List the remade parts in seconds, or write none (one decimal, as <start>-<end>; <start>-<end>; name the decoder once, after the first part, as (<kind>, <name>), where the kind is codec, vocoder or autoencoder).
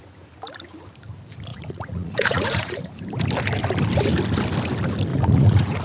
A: 1.5-3.0 (vocoder, Vocos); 5.1-5.8